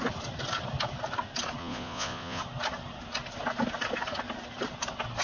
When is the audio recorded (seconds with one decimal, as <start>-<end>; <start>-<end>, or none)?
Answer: 0.0-1.6; 2.4-5.2